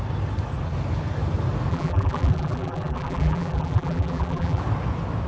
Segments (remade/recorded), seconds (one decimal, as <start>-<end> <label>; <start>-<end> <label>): 0.0-1.7 recorded; 1.7-4.6 remade; 4.6-5.3 recorded